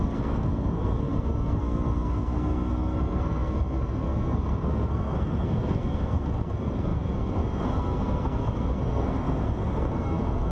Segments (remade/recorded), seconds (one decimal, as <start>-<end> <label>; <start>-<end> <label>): 0.0-10.5 remade